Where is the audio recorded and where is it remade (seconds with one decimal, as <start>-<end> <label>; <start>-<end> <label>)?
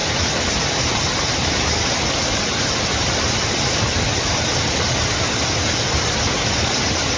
0.0-7.2 recorded